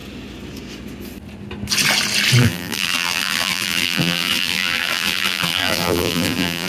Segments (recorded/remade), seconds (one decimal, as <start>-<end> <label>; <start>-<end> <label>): 0.0-2.4 recorded; 2.4-6.7 remade